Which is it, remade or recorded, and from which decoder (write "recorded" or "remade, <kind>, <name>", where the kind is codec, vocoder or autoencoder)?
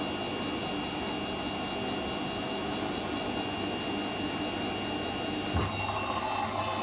recorded